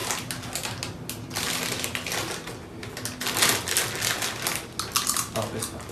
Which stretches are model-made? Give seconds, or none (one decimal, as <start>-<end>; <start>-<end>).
none